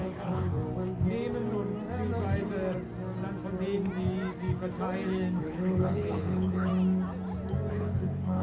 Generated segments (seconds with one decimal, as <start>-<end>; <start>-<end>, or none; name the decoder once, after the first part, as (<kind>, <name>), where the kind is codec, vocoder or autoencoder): 0.0-0.6 (codec, HILCodec); 5.4-6.7; 7.7-8.4